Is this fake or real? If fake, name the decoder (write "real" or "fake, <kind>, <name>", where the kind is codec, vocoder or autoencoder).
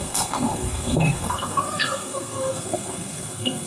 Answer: fake, codec, SNAC